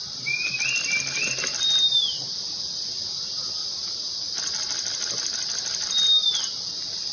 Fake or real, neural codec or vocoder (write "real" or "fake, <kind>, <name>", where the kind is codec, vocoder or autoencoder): real